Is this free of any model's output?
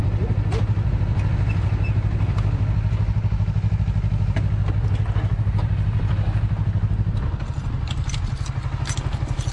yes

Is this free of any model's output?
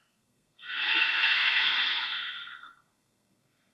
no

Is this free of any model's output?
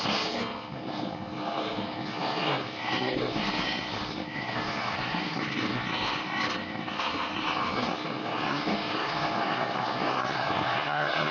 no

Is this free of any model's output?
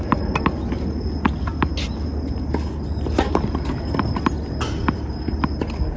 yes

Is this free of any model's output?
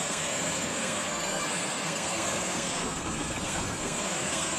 no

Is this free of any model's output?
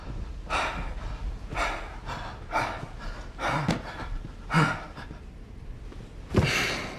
yes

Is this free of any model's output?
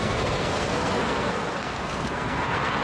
no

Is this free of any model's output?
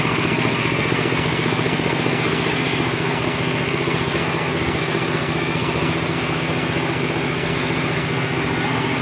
no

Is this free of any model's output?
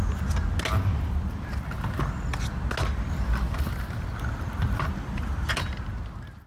yes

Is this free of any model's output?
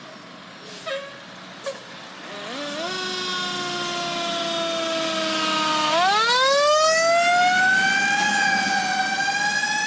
yes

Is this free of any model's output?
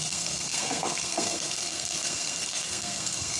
no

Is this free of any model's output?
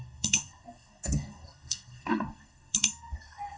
no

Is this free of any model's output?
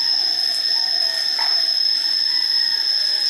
yes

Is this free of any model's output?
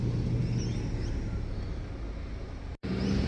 yes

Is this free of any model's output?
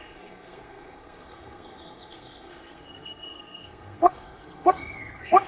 no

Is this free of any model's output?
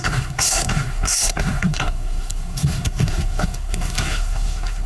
no